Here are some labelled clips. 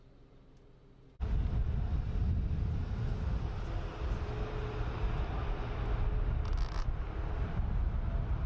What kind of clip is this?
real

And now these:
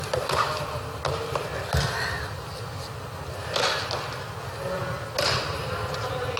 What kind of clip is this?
real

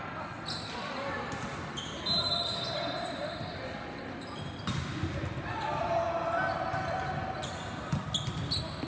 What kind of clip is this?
real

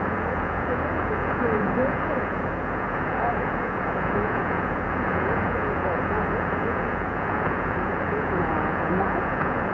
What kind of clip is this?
fake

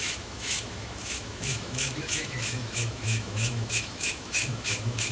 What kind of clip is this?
fake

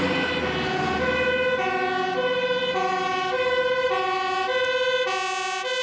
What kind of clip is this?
real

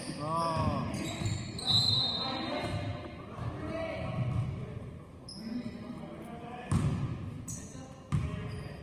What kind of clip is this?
real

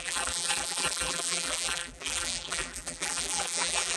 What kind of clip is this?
fake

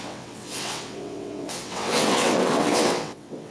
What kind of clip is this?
fake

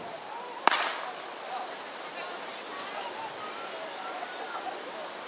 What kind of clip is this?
real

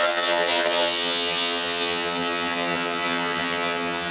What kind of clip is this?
fake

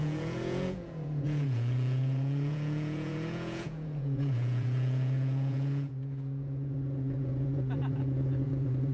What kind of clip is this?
fake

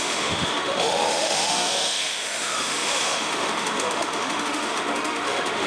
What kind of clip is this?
fake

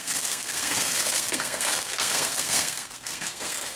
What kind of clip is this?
fake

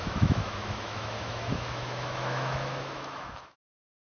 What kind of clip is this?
fake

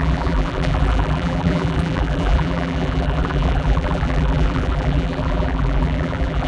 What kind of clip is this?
fake